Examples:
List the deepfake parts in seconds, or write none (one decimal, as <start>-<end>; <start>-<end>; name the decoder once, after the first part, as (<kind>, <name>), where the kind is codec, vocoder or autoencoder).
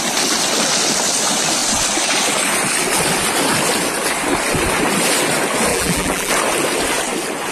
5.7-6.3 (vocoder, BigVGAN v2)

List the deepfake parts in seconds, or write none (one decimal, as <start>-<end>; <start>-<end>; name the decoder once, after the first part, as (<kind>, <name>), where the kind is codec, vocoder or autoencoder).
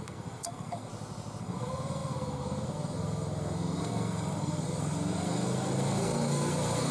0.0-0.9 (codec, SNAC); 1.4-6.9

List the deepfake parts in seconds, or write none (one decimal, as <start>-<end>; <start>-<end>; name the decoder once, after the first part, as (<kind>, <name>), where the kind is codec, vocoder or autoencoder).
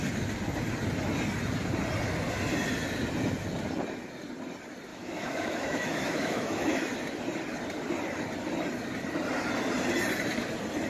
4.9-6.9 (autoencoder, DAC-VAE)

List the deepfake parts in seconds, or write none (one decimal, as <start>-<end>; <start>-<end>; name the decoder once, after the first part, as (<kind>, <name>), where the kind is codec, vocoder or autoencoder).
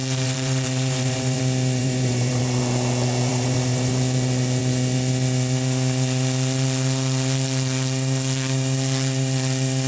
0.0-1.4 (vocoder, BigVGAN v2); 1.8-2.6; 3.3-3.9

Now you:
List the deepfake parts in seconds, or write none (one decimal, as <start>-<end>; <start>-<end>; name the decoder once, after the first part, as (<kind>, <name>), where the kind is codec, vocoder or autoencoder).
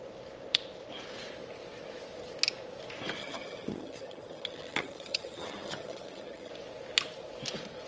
3.2-6.5 (vocoder, HiFi-GAN)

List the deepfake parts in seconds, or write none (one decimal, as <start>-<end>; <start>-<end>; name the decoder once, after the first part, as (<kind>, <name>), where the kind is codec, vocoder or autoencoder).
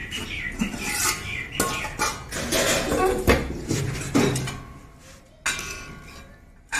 none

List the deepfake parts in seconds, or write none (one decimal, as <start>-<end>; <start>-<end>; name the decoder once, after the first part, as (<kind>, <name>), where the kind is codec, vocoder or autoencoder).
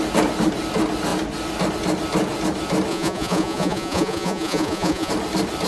2.9-5.1 (vocoder, Vocos)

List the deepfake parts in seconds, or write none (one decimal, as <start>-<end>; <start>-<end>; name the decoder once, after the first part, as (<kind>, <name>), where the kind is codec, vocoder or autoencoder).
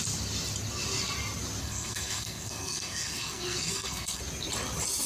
1.6-4.2 (codec, SNAC)